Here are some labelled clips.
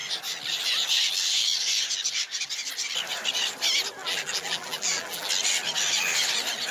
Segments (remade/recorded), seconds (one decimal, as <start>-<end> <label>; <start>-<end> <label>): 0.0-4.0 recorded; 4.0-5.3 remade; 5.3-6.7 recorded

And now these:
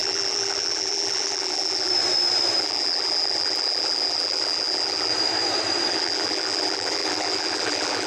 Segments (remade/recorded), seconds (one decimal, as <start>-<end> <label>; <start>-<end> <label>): 0.0-1.9 remade; 1.9-2.6 recorded; 2.6-5.1 remade; 5.1-5.9 recorded; 5.9-8.1 remade

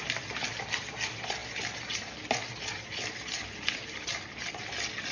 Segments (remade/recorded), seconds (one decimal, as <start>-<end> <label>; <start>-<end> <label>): 0.0-5.1 recorded

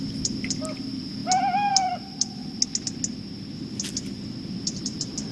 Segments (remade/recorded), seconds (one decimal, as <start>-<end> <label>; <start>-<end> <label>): 0.0-1.2 remade; 1.2-1.7 recorded; 1.7-2.4 remade; 2.4-4.5 recorded; 4.5-5.3 remade

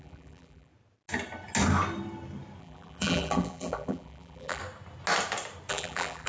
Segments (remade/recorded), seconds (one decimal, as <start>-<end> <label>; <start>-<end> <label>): 0.0-0.7 remade; 0.7-2.6 recorded; 2.6-4.6 remade; 4.6-5.7 recorded; 5.7-6.3 remade

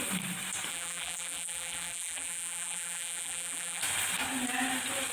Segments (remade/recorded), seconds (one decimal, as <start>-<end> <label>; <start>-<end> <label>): 0.0-0.7 recorded; 0.7-3.8 remade; 3.8-5.1 recorded

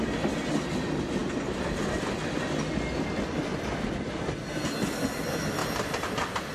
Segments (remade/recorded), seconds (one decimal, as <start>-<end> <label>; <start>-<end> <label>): 0.0-1.2 recorded; 1.2-2.4 remade; 2.4-3.5 recorded; 3.5-4.6 remade; 4.6-6.5 recorded

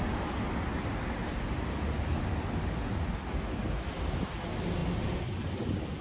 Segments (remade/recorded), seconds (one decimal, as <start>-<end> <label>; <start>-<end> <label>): 0.0-6.0 recorded